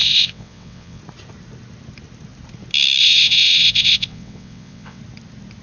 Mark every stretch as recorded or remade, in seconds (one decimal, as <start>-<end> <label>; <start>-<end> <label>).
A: 0.0-1.0 remade; 1.0-3.0 recorded; 3.0-5.0 remade; 5.0-5.6 recorded